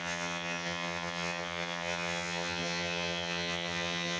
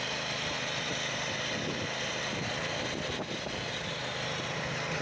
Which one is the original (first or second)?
second